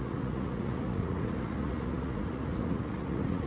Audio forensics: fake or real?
fake